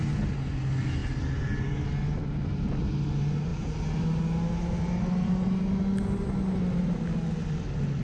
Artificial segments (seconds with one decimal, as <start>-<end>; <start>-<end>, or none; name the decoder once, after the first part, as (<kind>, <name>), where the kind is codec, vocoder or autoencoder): none